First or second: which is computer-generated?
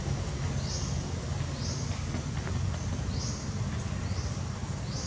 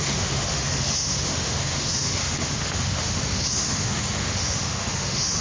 second